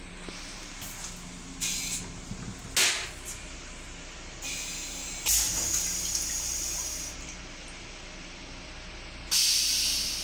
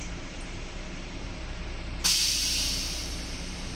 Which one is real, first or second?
first